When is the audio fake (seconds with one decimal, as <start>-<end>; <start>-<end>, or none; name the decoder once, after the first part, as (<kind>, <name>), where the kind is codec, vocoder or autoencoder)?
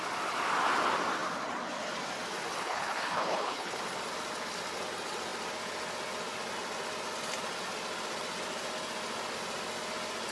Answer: 2.6-3.8 (codec, HILCodec)